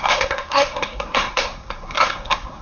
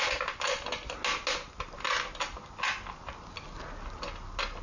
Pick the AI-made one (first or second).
first